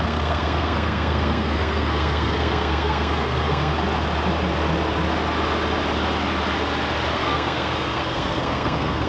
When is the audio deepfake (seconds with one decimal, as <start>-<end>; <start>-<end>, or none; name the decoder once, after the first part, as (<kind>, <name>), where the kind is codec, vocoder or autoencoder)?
0.0-3.7 (codec, SNAC); 7.1-9.1